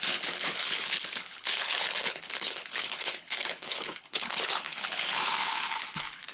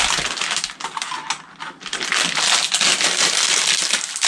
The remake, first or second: first